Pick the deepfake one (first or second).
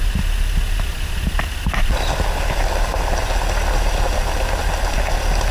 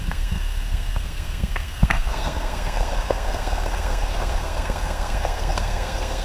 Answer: second